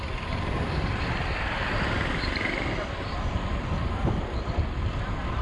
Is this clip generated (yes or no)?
yes